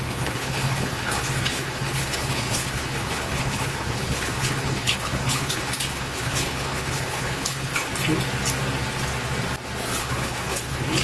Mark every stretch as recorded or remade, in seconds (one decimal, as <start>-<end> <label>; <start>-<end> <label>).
0.0-7.9 remade; 7.9-10.0 recorded; 10.0-11.0 remade